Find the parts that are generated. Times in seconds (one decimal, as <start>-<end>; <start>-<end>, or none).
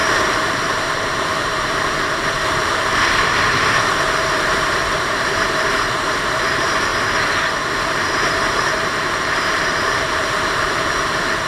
0.0-6.9; 8.3-11.5